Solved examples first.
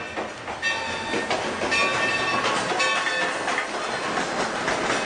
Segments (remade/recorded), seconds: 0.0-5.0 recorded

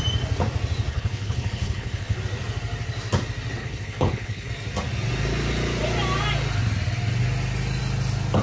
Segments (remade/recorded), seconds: 0.0-0.9 recorded; 0.9-2.2 remade; 2.2-3.6 recorded; 3.6-4.5 remade; 4.5-8.4 recorded

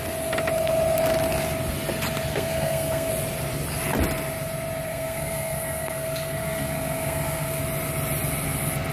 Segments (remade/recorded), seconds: 0.0-2.3 recorded; 2.3-3.1 remade; 3.1-4.9 recorded; 4.9-7.6 remade; 7.6-8.9 recorded